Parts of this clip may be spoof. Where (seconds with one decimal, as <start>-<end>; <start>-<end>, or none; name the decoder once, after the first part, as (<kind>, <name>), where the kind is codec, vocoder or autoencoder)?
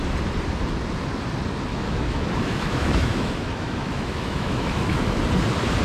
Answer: 1.7-5.2 (autoencoder, DAC-VAE)